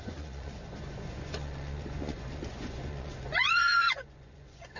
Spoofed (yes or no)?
yes